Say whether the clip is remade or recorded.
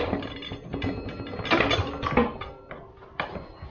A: recorded